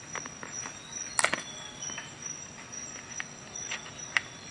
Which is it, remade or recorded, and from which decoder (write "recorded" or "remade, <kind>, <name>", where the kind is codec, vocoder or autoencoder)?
recorded